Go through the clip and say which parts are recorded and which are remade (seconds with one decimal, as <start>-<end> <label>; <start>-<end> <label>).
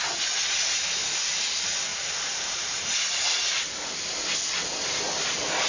0.0-1.9 recorded; 1.9-2.6 remade; 2.6-3.5 recorded; 3.5-4.1 remade; 4.1-5.7 recorded